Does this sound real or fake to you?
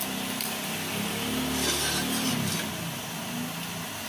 real